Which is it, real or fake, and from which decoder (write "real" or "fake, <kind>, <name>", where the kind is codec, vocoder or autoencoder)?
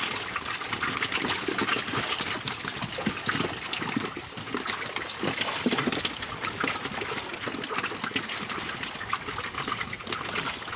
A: real